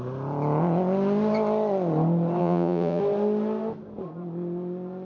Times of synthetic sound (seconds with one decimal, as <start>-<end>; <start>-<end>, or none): 2.4-3.0